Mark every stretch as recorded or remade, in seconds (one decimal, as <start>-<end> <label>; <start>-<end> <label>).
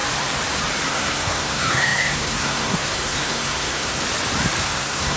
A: 0.0-0.9 recorded; 0.9-4.0 remade; 4.0-4.6 recorded; 4.6-5.2 remade